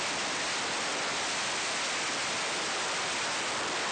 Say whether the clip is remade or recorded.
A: recorded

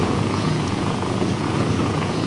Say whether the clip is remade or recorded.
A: remade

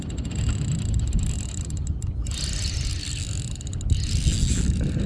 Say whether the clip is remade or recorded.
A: recorded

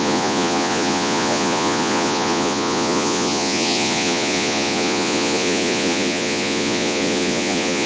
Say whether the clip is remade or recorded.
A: remade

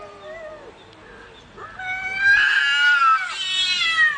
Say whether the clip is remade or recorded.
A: recorded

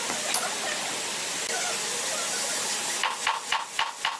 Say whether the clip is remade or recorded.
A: recorded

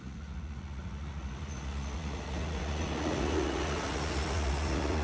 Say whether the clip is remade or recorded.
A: remade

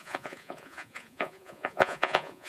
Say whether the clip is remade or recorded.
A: remade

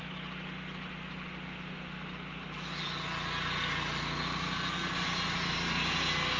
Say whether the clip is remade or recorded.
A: recorded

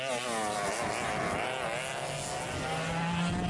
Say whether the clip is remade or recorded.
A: recorded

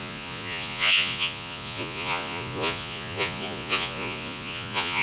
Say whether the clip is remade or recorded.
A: remade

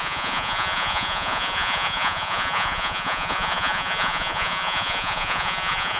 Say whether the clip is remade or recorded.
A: remade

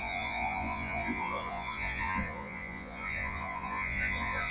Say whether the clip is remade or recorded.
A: remade